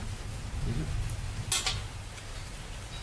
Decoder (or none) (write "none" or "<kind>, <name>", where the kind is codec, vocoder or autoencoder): none